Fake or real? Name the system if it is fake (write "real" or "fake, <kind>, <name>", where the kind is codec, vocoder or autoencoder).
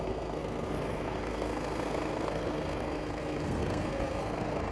fake, codec, SNAC